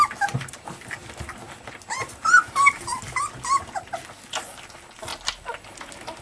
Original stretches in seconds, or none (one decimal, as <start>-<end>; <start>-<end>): 0.0-6.2